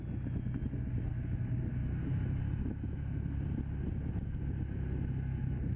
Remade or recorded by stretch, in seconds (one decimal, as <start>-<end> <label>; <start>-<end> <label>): 0.0-5.8 recorded